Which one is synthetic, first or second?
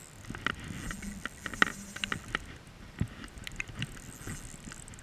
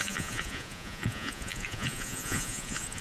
second